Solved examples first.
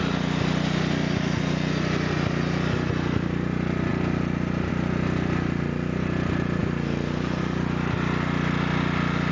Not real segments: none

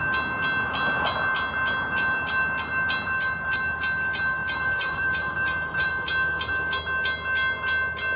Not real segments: 4.4-5.9 (vocoder, BigVGAN v2)

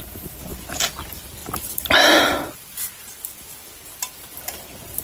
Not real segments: 0.0-0.5 (vocoder, BigVGAN v2); 1.0-1.4; 4.4-5.0

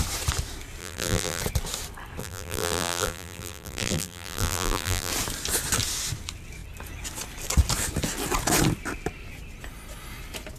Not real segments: 0.8-1.4 (vocoder, BigVGAN v2); 2.2-5.1

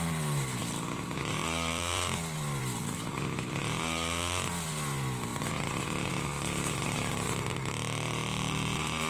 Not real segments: none

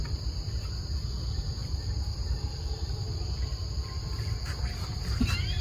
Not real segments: 0.0-0.7 (vocoder, BigVGAN v2); 1.6-5.0